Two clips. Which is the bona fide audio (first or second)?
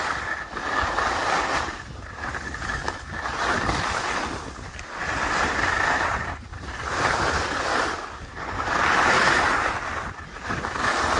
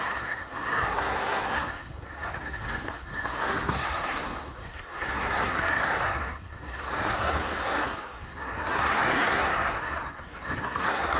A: first